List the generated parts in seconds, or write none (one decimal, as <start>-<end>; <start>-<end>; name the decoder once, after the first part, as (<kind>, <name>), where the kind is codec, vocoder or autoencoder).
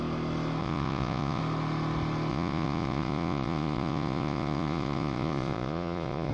0.6-1.4 (vocoder, Vocos); 2.3-6.3